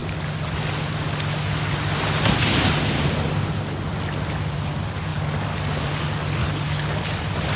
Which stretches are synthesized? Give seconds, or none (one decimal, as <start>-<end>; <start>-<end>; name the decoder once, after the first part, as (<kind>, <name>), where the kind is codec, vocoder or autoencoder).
6.4-7.0 (codec, DAC)